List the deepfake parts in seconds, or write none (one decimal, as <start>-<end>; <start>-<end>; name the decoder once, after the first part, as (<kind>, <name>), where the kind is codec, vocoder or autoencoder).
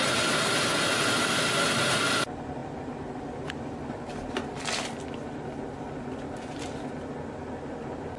2.6-5.0 (vocoder, BigVGAN v2)